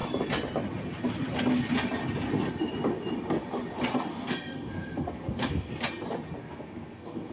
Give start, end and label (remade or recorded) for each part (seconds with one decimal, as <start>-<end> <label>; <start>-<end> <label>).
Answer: 0.0-4.1 recorded; 4.1-5.7 remade; 5.7-6.4 recorded; 6.4-7.3 remade